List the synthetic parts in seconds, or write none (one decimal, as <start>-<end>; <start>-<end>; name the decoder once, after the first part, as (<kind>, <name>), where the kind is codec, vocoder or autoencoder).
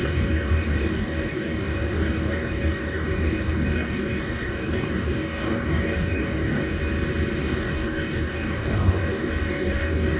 0.0-6.8 (codec, DAC); 7.4-10.2